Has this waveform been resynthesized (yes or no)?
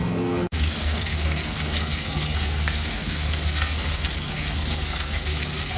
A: yes